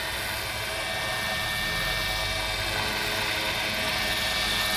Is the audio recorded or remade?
recorded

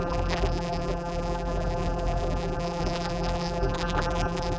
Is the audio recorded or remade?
remade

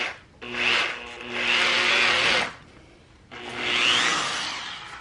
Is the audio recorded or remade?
recorded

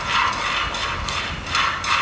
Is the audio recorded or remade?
recorded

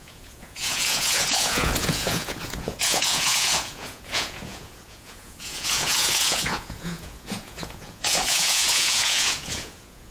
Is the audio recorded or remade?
remade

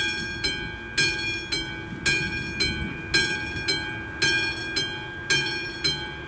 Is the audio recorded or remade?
recorded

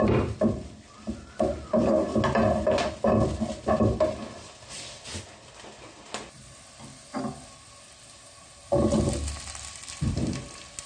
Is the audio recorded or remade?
recorded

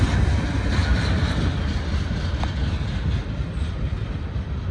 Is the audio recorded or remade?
recorded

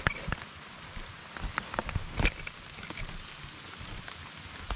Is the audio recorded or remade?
recorded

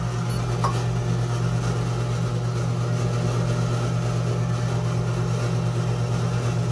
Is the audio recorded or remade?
recorded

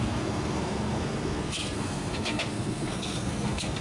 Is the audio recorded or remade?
remade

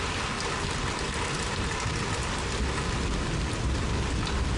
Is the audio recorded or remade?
recorded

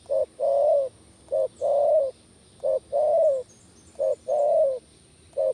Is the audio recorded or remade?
recorded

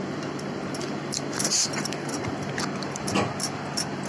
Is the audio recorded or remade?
remade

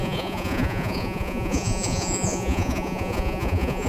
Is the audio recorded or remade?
remade